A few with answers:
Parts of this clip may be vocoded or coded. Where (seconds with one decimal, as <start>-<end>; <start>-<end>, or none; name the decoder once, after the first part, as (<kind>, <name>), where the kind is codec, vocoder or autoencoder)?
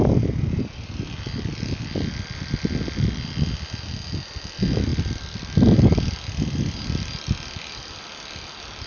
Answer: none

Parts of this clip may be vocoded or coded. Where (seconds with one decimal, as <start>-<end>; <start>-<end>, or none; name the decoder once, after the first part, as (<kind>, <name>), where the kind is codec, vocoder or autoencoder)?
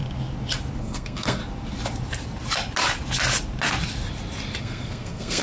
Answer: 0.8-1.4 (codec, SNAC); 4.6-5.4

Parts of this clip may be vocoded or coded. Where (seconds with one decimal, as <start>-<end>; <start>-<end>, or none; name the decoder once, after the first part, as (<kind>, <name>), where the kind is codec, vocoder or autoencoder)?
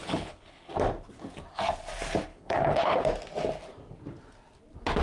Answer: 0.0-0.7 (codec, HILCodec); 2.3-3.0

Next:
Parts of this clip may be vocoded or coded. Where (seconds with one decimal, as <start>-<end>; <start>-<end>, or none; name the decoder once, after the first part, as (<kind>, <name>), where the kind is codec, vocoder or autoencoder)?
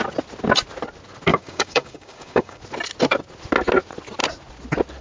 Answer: 1.3-2.6 (codec, DAC)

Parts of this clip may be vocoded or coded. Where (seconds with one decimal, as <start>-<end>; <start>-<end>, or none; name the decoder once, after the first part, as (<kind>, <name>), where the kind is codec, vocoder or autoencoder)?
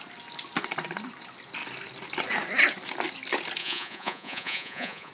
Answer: 3.6-5.1 (vocoder, Vocos)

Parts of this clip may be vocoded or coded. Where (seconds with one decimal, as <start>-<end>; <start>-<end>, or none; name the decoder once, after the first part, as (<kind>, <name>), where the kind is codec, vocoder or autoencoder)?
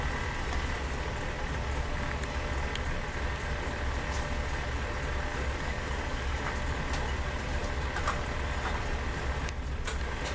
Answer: 5.3-6.5 (codec, DAC)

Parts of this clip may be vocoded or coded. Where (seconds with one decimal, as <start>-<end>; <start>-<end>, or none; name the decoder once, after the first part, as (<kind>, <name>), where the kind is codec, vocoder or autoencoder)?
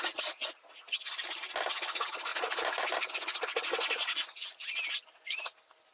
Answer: none